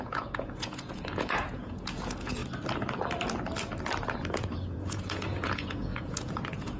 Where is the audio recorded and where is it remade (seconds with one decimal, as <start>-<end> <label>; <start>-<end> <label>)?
0.0-2.4 remade; 2.4-4.3 recorded; 4.3-6.8 remade